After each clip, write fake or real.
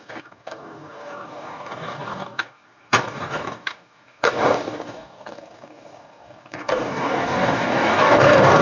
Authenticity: fake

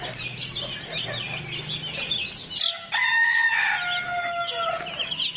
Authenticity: real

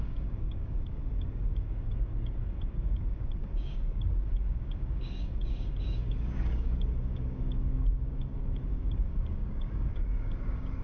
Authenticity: fake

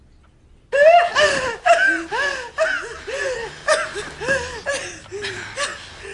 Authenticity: real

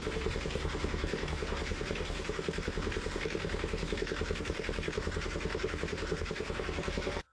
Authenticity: fake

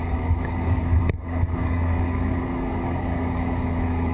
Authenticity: fake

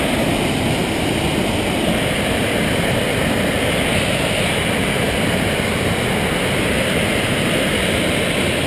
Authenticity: real